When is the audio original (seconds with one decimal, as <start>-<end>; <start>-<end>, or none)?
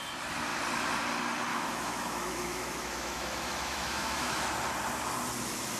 0.0-1.5; 4.5-5.8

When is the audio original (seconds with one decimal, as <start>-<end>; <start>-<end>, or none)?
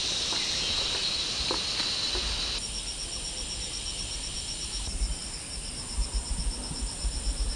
1.0-3.6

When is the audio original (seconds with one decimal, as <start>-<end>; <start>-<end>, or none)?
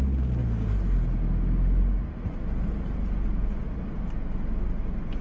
0.0-5.2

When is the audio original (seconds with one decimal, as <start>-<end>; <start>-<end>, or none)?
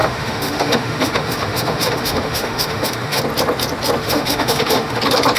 3.2-4.0; 5.0-5.4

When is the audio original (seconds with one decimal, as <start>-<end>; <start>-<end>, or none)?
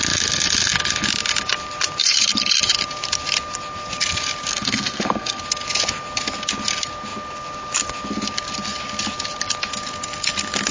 0.0-4.5; 5.4-10.7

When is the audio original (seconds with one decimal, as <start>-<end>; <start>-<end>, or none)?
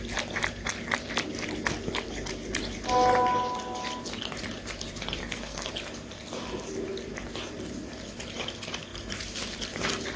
0.0-5.2; 5.7-10.2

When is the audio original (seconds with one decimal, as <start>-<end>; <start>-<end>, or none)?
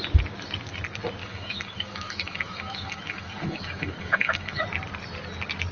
0.0-1.2; 4.6-5.7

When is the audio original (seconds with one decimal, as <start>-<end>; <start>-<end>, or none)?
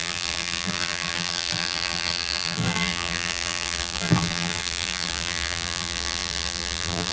none